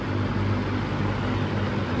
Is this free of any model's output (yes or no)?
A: yes